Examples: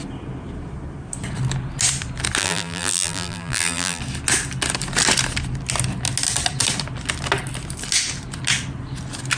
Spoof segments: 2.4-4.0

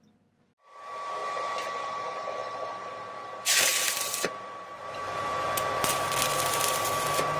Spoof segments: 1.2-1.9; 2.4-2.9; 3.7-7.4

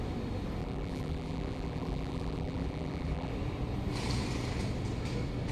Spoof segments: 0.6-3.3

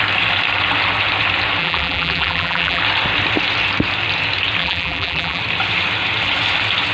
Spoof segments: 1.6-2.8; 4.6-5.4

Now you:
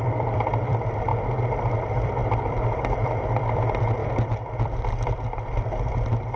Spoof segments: 0.0-1.1; 1.8-6.4

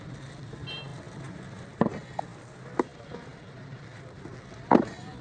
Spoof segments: 0.0-5.2

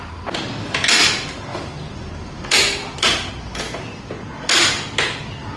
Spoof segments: 1.5-3.3